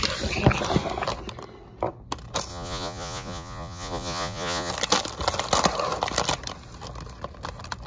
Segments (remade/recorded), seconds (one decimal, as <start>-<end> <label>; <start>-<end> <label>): 0.0-2.5 recorded; 2.5-4.7 remade; 4.7-7.9 recorded